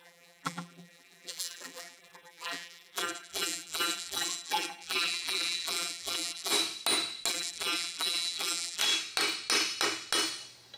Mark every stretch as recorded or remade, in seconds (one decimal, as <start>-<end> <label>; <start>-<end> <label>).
0.0-6.5 remade; 6.5-7.3 recorded; 7.3-8.8 remade; 8.8-10.8 recorded